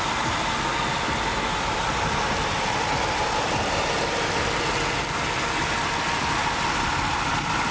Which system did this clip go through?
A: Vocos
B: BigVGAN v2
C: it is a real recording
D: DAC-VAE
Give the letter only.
C